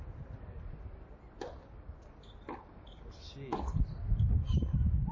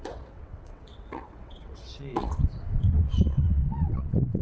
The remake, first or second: second